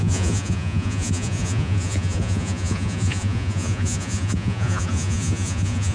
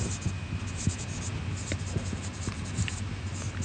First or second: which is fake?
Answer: first